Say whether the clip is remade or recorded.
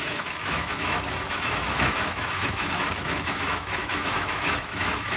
remade